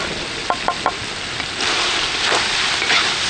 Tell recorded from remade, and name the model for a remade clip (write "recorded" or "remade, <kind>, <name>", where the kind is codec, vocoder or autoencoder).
recorded